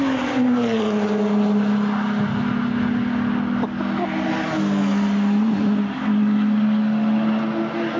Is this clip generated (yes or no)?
no